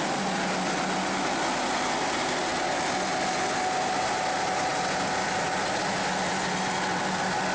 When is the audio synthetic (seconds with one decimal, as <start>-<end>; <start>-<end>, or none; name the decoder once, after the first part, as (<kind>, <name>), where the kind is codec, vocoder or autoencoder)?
none